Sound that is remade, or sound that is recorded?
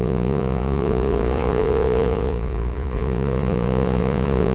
remade